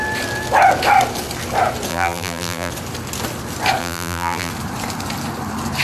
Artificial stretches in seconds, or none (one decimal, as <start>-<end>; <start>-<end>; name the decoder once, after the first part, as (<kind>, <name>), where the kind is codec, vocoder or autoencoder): 1.9-2.7 (vocoder, BigVGAN v2); 3.8-4.5

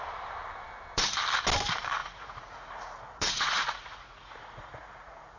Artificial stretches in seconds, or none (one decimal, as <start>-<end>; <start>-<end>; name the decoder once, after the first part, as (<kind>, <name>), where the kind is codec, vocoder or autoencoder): 2.0-5.4 (vocoder, Vocos)

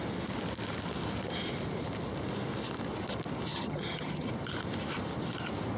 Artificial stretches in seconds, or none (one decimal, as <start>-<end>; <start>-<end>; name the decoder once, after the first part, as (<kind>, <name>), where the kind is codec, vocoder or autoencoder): 3.5-4.3 (vocoder, HiFi-GAN)

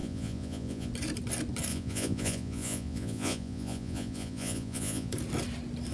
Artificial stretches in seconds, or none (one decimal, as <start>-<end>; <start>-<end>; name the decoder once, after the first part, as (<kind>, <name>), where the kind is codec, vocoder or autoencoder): 0.0-0.9 (vocoder, Vocos); 1.7-5.1

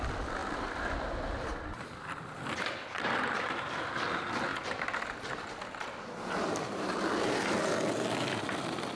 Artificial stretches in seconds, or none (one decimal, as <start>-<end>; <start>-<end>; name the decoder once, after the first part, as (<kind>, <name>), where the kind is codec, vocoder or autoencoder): 0.4-3.9 (vocoder, BigVGAN v2); 4.5-5.5

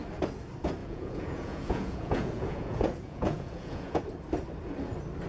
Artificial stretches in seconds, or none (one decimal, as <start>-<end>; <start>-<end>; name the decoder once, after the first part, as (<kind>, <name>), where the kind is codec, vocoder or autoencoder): 0.8-4.0 (vocoder, Vocos)

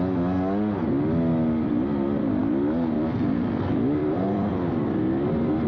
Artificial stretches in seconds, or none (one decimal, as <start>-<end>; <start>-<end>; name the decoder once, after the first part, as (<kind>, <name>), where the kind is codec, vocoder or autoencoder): 2.4-3.2 (vocoder, BigVGAN v2); 4.0-5.7

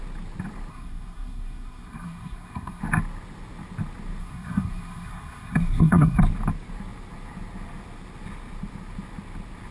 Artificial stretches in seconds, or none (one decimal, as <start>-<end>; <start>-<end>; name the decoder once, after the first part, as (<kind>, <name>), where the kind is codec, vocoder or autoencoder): 0.7-2.8 (codec, SNAC); 4.2-6.2